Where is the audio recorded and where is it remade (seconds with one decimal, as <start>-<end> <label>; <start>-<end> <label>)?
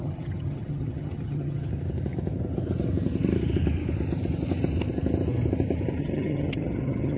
0.0-1.7 remade; 1.7-6.0 recorded; 6.0-7.2 remade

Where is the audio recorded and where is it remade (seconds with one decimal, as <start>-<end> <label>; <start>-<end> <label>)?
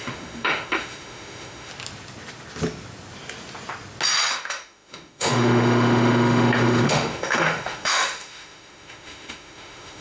0.0-1.7 remade; 1.7-4.3 recorded; 4.3-10.0 remade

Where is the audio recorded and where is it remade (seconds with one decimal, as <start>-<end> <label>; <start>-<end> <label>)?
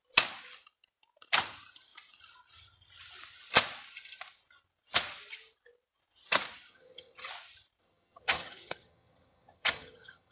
0.0-6.7 recorded; 6.7-7.3 remade; 7.3-7.8 recorded; 7.8-10.3 remade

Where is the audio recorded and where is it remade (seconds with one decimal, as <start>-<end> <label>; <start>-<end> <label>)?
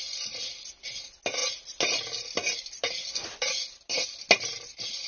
0.0-5.1 recorded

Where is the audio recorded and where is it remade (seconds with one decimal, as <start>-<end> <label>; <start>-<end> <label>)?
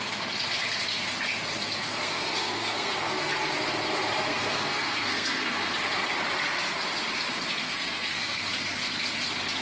0.0-1.8 recorded; 1.8-3.3 remade; 3.3-4.3 recorded; 4.3-5.7 remade; 5.7-7.6 recorded; 7.6-8.4 remade; 8.4-9.6 recorded